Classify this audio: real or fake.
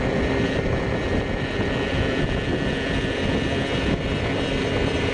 real